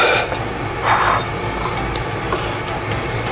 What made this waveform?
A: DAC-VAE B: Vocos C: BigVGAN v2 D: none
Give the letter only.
D